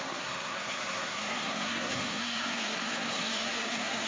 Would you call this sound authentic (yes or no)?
no